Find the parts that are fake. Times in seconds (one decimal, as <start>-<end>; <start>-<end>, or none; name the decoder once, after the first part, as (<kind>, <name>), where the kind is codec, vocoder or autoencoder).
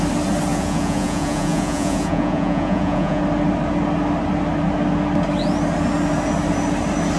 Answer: 0.5-3.2 (vocoder, Vocos)